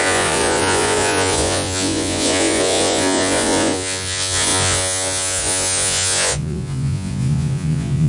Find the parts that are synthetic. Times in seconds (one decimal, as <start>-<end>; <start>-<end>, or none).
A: 0.0-8.1